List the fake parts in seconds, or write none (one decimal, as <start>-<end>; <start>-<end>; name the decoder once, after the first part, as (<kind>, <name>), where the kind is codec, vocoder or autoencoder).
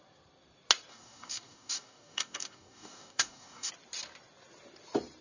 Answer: 0.9-3.7 (codec, DAC)